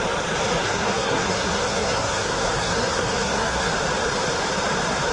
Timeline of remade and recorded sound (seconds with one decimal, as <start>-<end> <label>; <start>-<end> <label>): 0.0-0.6 recorded; 0.6-3.7 remade; 3.7-5.1 recorded